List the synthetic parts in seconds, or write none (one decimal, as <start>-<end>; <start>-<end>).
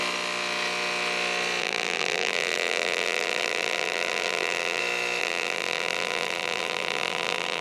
1.6-4.8; 5.2-7.6